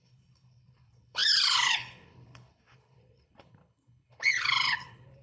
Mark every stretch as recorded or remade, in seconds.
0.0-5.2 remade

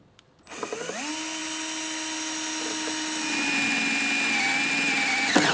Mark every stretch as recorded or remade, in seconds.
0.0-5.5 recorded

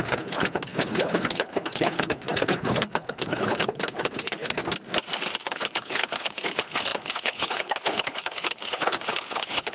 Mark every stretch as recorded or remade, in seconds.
0.0-4.6 remade; 4.6-5.4 recorded; 5.4-9.7 remade